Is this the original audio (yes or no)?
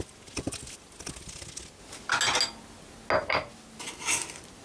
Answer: yes